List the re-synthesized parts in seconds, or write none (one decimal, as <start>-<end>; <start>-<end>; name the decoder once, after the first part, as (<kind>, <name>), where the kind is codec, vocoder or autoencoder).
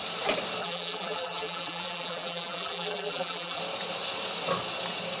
0.6-3.6 (vocoder, BigVGAN v2)